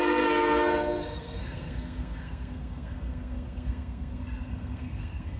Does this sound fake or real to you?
fake